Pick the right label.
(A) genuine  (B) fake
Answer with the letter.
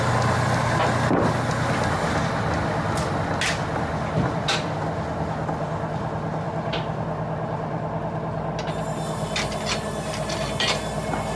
A